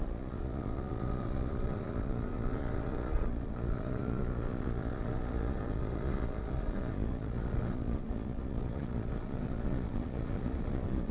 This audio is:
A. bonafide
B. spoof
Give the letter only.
B